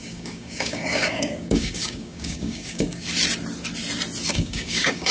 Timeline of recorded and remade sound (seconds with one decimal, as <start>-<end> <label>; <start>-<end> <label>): 0.0-3.1 remade; 3.1-4.3 recorded; 4.3-5.1 remade